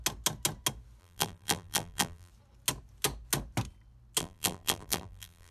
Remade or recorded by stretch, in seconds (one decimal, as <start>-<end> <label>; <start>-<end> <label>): 0.0-1.0 recorded; 1.0-2.3 remade; 2.3-4.2 recorded; 4.2-5.5 remade